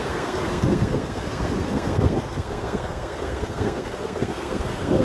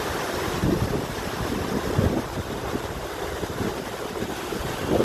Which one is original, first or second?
second